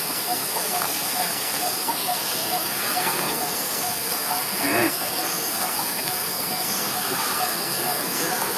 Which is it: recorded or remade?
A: remade